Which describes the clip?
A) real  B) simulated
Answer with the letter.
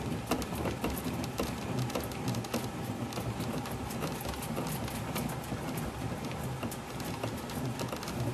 A